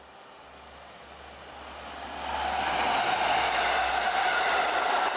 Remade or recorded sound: recorded